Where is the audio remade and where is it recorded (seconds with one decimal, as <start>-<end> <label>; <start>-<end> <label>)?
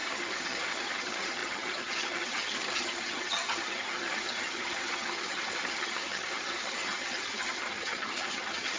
0.0-8.8 remade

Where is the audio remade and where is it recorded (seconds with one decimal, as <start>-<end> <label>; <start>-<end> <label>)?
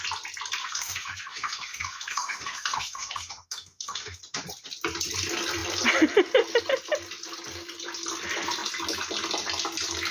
0.0-0.6 recorded; 0.6-4.2 remade; 4.2-10.1 recorded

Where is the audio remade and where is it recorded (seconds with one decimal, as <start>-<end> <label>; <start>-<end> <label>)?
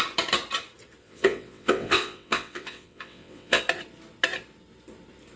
0.0-1.0 recorded; 1.0-3.6 remade; 3.6-5.4 recorded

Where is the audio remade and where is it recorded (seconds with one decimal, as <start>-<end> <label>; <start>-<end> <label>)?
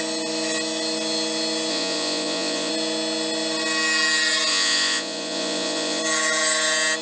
0.0-1.7 recorded; 1.7-2.7 remade; 2.7-4.5 recorded; 4.5-6.0 remade; 6.0-7.0 recorded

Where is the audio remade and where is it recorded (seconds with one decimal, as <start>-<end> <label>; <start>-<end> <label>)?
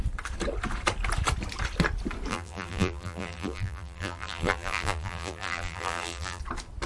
0.0-2.3 recorded; 2.3-6.4 remade; 6.4-6.9 recorded